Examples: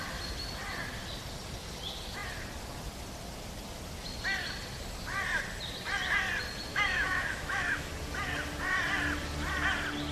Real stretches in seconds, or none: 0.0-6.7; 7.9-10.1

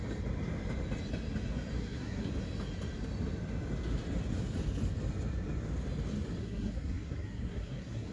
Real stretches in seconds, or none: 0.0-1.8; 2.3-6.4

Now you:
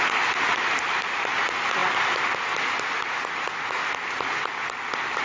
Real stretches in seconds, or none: 0.0-5.2